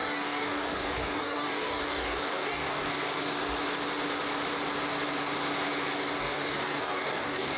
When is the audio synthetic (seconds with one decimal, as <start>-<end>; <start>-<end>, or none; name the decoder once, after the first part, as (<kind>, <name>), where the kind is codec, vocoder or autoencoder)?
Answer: 0.0-2.9 (codec, DAC); 6.2-7.6